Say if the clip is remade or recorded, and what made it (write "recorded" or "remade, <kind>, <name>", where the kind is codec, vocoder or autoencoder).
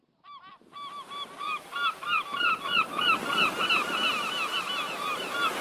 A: recorded